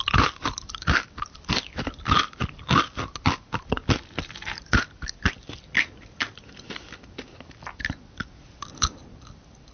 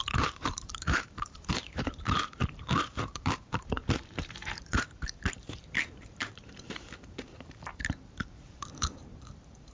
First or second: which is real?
first